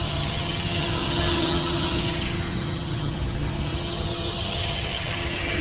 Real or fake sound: fake